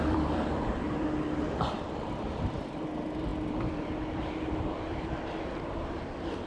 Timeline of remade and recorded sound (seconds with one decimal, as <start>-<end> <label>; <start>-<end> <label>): 0.0-6.5 remade